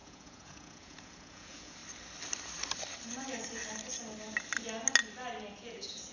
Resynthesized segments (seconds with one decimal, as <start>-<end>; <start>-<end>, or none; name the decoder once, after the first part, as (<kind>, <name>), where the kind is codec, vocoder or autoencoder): 0.0-1.8 (vocoder, Vocos); 5.5-6.1